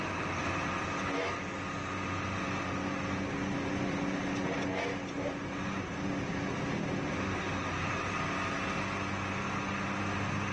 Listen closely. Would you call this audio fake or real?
real